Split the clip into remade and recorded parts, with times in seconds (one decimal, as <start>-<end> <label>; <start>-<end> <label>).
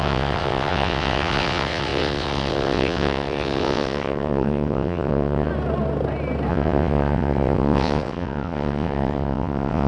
0.0-5.5 remade; 5.5-6.5 recorded; 6.5-9.9 remade